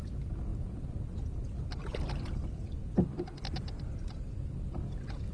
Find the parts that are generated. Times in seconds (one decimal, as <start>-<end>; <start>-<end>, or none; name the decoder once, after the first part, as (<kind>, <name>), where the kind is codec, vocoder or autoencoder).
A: none

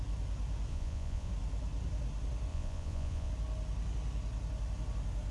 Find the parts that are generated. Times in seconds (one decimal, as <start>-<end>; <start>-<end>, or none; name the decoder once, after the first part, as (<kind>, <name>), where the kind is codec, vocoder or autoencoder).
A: 0.7-1.3 (vocoder, Vocos); 2.5-3.3

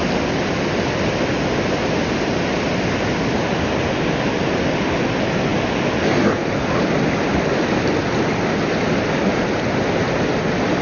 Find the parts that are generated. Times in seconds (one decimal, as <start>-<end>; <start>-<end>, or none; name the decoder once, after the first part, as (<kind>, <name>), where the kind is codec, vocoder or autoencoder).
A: none

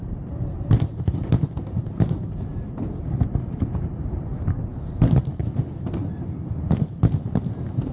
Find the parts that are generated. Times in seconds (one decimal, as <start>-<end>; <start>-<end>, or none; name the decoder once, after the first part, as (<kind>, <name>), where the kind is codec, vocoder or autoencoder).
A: 0.0-2.0 (vocoder, BigVGAN v2); 6.0-7.3

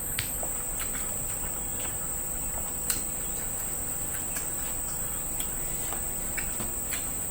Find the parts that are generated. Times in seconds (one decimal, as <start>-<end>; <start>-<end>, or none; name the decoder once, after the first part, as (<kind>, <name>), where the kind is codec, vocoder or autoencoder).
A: 1.7-4.5 (vocoder, BigVGAN v2)

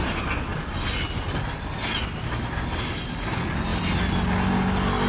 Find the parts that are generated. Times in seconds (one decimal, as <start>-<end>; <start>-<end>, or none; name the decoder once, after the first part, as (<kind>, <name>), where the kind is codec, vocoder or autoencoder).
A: none

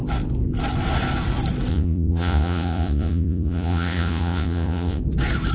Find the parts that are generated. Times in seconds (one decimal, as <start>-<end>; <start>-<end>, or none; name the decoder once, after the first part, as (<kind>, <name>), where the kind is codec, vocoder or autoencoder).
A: 1.7-5.0 (vocoder, Vocos)

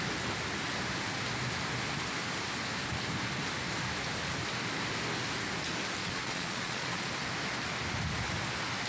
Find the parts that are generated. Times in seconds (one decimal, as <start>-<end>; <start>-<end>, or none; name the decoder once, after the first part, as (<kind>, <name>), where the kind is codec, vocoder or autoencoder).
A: 6.0-7.1 (vocoder, Vocos)